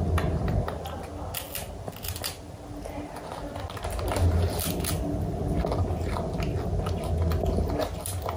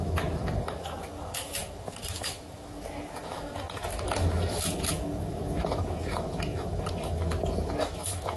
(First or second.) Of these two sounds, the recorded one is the first